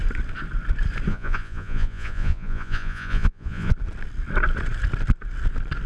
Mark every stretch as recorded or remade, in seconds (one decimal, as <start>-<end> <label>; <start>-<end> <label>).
0.0-1.1 recorded; 1.1-3.7 remade; 3.7-5.9 recorded